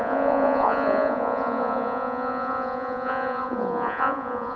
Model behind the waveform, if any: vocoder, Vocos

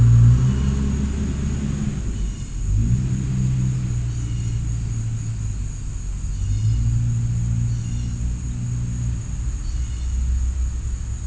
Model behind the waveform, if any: none